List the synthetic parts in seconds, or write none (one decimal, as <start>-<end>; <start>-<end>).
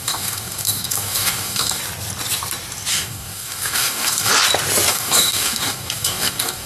0.0-1.8; 2.9-4.3; 4.9-6.7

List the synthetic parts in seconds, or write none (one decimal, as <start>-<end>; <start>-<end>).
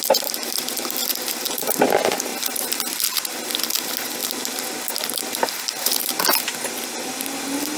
none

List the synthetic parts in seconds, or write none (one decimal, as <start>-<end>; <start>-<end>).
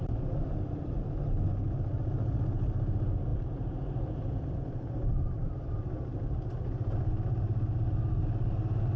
none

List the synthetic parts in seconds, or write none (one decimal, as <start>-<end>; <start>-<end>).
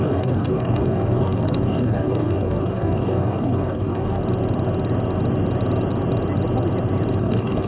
0.0-4.2; 7.2-7.7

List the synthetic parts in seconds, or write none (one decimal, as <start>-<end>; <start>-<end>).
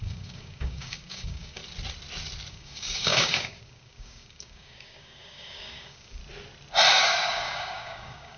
0.0-1.6; 2.5-6.2; 6.9-8.4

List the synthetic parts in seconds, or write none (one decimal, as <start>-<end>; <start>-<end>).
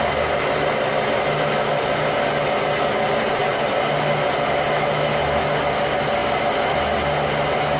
none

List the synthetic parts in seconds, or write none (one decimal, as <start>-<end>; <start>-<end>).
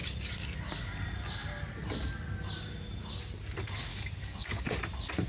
3.9-4.8